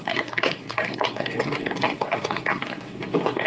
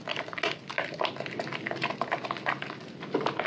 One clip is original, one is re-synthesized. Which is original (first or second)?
second